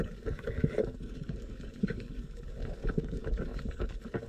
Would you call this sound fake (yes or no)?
yes